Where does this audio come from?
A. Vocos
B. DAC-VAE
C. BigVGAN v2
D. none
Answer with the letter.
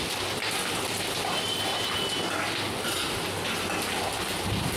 D